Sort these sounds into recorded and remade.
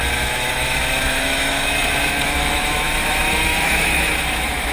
remade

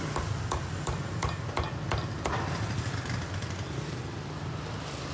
recorded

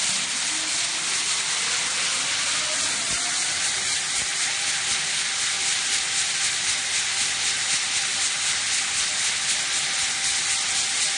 recorded